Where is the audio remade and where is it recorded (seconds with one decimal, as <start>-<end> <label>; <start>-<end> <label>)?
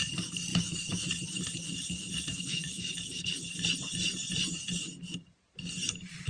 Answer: 0.0-0.5 recorded; 0.5-1.1 remade; 1.1-2.3 recorded; 2.3-2.9 remade; 2.9-6.3 recorded